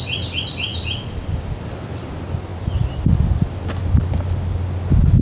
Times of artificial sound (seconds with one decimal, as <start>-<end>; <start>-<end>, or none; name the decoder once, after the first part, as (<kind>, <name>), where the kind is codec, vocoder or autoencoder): none